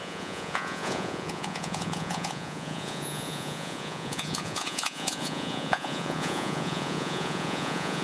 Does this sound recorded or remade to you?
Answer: remade